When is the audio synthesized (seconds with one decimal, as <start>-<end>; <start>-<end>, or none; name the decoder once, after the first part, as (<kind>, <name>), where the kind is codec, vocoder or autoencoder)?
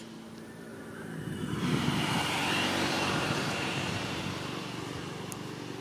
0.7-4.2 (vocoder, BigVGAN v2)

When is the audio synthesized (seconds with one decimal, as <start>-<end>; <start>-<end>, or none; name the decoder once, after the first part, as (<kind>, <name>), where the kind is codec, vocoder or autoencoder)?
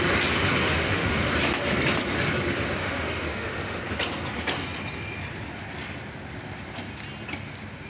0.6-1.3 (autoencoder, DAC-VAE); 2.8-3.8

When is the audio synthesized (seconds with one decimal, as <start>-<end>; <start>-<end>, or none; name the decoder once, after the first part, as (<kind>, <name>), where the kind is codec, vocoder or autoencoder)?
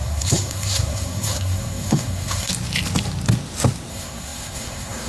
0.0-2.5 (codec, SNAC); 3.9-5.1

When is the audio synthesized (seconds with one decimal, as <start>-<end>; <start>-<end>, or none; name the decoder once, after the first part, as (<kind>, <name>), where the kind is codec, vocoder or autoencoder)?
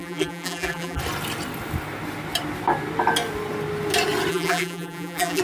0.0-1.0 (vocoder, BigVGAN v2); 4.3-5.4